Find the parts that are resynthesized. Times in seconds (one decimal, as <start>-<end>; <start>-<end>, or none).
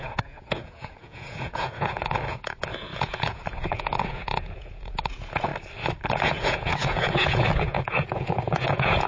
0.0-5.5; 6.1-9.1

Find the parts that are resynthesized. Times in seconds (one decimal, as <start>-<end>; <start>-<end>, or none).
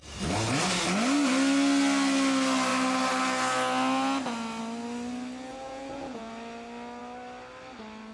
5.5-6.3